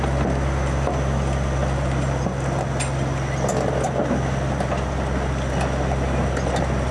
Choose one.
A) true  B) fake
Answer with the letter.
A